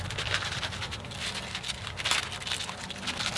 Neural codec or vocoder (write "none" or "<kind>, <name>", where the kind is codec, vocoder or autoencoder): none